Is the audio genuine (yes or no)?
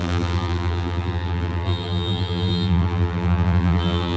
no